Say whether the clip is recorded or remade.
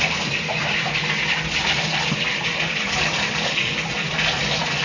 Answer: recorded